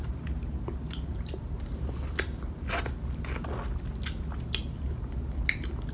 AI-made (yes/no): no